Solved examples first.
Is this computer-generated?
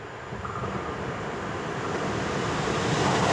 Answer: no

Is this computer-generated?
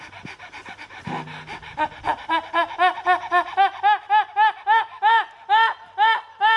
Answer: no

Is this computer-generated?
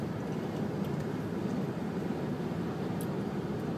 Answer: no